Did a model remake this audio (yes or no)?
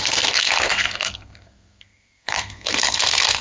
yes